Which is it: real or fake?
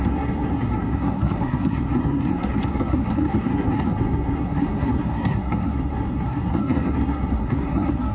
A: fake